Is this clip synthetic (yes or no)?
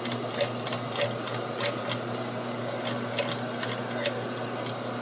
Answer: no